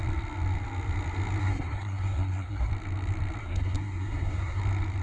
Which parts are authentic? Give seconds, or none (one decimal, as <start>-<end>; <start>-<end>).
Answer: 0.0-1.4; 2.7-3.4; 4.6-5.0

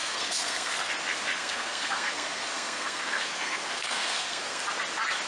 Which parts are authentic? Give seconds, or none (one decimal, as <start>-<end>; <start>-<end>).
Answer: 0.9-1.4; 4.6-5.3

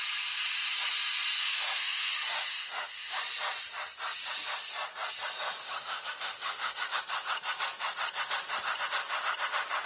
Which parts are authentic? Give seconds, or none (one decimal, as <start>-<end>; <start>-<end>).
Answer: 0.0-1.4; 3.2-5.6; 7.0-9.9

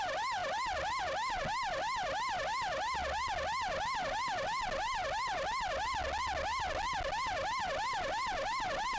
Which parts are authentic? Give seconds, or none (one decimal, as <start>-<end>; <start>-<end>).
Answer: 0.0-9.0

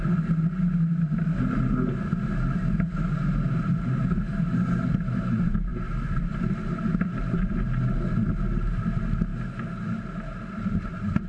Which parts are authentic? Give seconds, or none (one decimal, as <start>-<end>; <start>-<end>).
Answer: 0.0-11.3

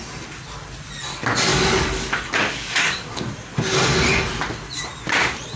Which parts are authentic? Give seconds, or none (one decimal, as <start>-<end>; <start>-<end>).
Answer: 0.0-1.5; 3.2-5.6

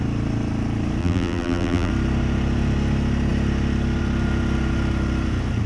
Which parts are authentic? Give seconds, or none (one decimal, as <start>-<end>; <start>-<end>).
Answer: 0.0-1.0; 1.9-5.7

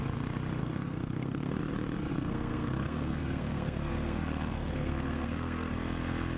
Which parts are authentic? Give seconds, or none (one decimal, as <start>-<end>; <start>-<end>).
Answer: 0.0-0.6; 1.6-2.1; 5.7-6.4